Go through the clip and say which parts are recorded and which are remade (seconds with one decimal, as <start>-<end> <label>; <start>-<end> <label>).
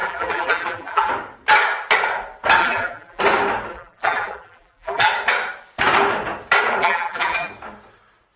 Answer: 0.0-1.1 remade; 1.1-2.6 recorded; 2.6-3.2 remade; 3.2-3.7 recorded; 3.7-5.1 remade; 5.1-6.8 recorded; 6.8-7.5 remade; 7.5-8.4 recorded